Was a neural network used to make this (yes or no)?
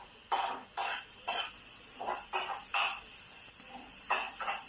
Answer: no